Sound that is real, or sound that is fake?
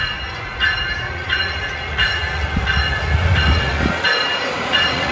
fake